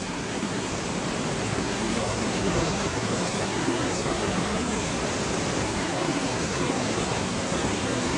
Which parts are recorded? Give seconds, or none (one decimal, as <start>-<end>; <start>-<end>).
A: 0.7-1.4; 5.0-5.6

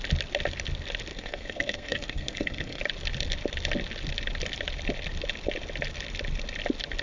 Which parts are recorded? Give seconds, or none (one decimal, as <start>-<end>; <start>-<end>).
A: 0.0-1.1; 2.8-7.0

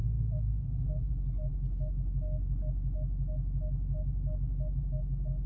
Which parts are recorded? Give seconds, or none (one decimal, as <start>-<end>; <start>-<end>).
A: 1.1-5.5

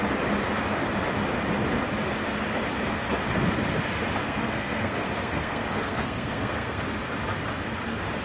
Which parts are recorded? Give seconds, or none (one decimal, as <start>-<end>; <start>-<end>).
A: 0.0-4.2; 6.8-8.2

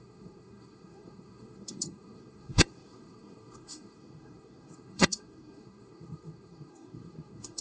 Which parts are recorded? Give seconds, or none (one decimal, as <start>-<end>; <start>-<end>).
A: none

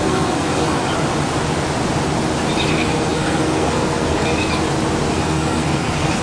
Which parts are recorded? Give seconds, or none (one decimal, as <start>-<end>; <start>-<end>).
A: 0.8-2.7; 4.4-5.1

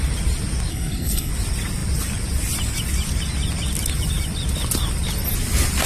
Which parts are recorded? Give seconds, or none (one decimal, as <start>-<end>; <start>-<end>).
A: 0.0-0.7; 1.3-5.9

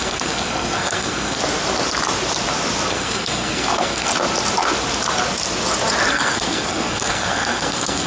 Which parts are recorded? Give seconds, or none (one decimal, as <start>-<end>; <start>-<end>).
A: 1.4-2.9; 4.1-6.1